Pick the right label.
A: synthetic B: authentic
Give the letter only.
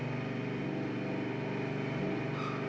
B